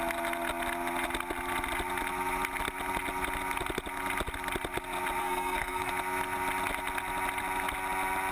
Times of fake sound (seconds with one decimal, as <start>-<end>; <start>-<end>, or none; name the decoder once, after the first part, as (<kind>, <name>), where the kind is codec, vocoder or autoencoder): 5.2-5.9 (codec, SNAC)